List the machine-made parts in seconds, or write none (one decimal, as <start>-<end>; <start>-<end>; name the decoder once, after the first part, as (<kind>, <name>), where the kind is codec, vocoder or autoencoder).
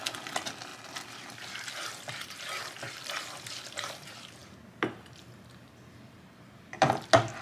none